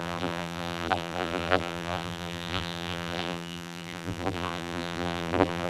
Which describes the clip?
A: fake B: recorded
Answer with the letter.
A